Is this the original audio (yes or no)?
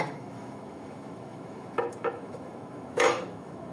no